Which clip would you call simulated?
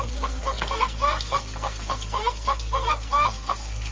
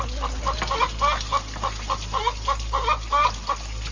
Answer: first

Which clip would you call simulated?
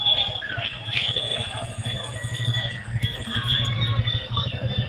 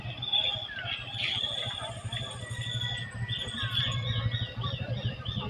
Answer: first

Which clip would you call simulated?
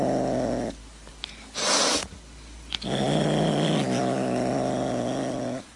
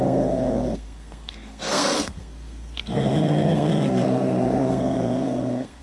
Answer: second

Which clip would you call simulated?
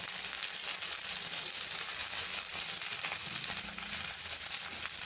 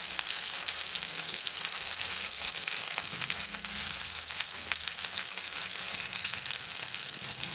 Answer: second